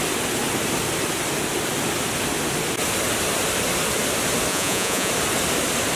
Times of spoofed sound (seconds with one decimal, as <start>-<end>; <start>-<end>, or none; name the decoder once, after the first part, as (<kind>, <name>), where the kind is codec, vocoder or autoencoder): 4.5-5.1 (vocoder, Vocos)